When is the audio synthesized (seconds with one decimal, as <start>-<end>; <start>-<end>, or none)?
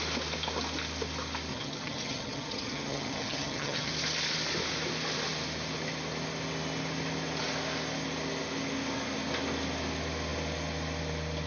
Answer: 1.5-3.9